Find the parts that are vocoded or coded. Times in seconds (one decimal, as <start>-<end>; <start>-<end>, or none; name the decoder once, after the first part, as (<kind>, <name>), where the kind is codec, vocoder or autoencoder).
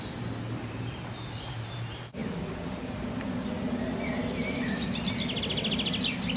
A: none